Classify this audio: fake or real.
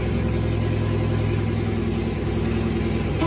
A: real